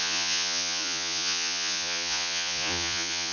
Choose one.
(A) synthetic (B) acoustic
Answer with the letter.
A